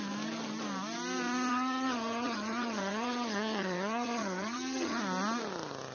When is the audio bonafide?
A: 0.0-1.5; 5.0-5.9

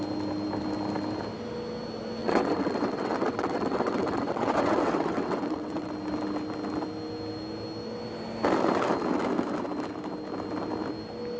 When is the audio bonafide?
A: 0.0-2.2; 5.9-11.4

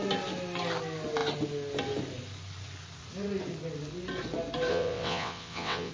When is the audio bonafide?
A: 0.0-4.7